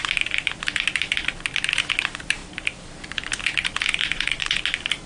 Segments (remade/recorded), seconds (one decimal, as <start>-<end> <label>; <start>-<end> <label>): 0.0-4.0 recorded; 4.0-4.6 remade; 4.6-5.1 recorded